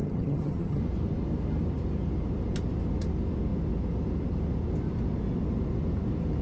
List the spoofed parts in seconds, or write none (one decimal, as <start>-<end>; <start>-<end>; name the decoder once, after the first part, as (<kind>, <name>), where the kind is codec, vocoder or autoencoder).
0.0-0.8 (vocoder, HiFi-GAN)